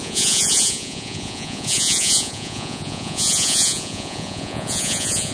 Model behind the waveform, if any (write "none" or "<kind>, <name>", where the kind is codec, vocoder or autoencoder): vocoder, Vocos